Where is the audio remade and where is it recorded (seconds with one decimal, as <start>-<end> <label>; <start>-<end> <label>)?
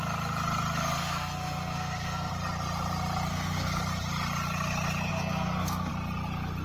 0.0-0.8 recorded; 0.8-2.3 remade; 2.3-3.3 recorded; 3.3-3.8 remade; 3.8-5.1 recorded; 5.1-5.9 remade; 5.9-6.6 recorded